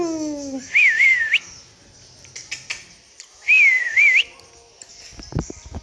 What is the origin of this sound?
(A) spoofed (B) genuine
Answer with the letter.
B